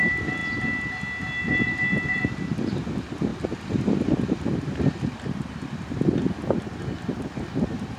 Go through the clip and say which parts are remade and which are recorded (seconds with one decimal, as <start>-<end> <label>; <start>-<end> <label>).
0.0-0.4 remade; 0.4-1.4 recorded; 1.4-8.0 remade

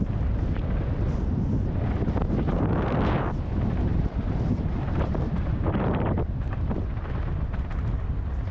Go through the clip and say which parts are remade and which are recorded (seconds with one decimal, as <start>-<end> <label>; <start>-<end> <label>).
0.0-3.9 recorded; 3.9-6.7 remade; 6.7-8.5 recorded

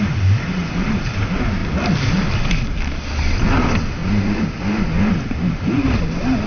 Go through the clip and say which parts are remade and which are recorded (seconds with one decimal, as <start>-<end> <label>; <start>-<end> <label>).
0.0-0.6 recorded; 0.6-1.2 remade; 1.2-1.6 recorded; 1.6-2.5 remade; 2.5-4.0 recorded; 4.0-6.0 remade; 6.0-6.5 recorded

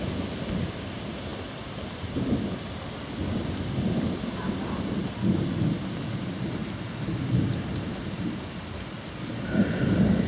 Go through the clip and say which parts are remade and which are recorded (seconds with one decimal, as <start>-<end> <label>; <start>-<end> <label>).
0.0-10.3 recorded